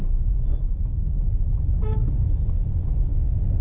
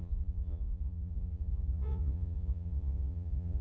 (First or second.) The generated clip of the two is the second